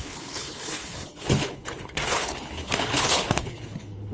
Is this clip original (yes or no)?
no